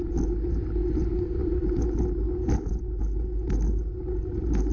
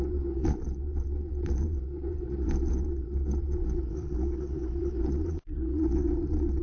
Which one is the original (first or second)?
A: first